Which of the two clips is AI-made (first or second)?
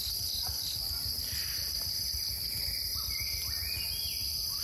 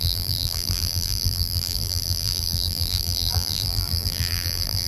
second